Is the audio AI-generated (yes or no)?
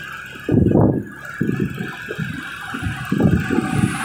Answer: no